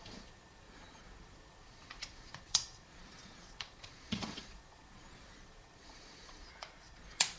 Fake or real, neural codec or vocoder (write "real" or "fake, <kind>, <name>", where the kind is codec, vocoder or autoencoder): fake, vocoder, Vocos